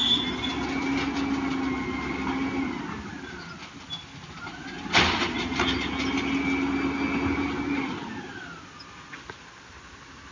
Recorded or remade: recorded